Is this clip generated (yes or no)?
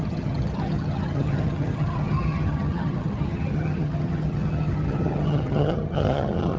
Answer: yes